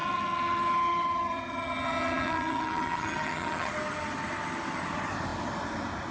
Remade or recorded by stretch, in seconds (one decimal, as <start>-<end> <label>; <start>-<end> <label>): 0.0-3.7 remade; 3.7-6.1 recorded